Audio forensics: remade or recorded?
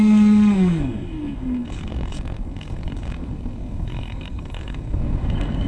remade